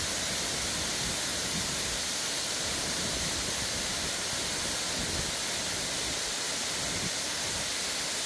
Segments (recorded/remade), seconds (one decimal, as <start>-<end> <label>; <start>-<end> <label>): 0.0-1.3 recorded; 1.3-4.4 remade; 4.4-8.3 recorded